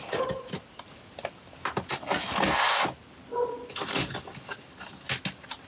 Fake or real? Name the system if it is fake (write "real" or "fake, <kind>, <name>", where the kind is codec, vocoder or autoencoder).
real